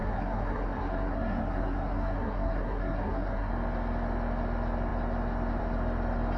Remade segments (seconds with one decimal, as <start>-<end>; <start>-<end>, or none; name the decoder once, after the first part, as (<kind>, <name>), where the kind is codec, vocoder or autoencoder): 0.0-3.5 (codec, SNAC)